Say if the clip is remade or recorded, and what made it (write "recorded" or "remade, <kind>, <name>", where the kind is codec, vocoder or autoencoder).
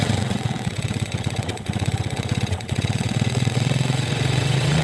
remade, vocoder, WaveNeXt